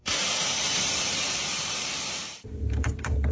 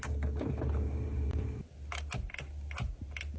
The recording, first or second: second